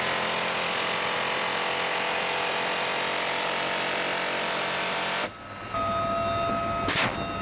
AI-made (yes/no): no